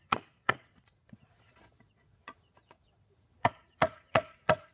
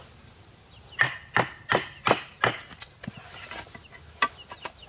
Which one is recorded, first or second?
second